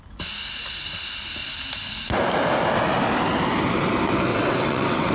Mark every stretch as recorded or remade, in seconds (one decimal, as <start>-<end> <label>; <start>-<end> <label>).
0.0-4.3 recorded; 4.3-5.1 remade